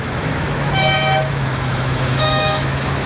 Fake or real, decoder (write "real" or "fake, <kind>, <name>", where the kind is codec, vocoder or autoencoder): fake, autoencoder, DAC-VAE